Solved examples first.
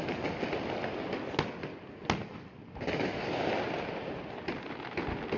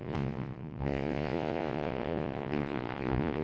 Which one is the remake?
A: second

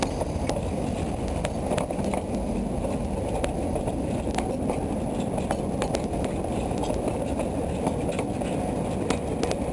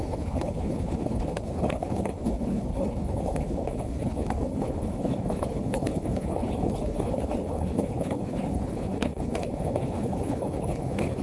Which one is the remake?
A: second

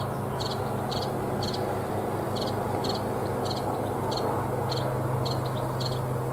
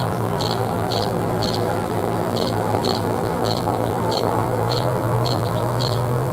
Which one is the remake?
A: second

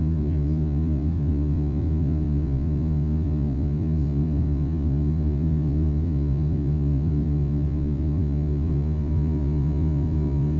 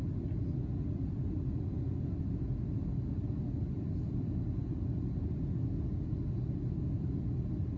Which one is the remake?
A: first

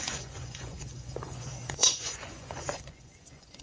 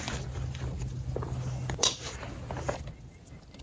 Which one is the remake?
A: first